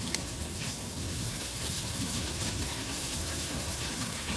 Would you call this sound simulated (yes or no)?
yes